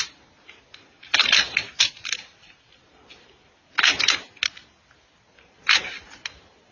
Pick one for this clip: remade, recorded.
recorded